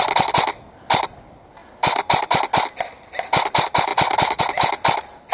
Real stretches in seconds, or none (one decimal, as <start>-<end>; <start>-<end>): 0.0-5.3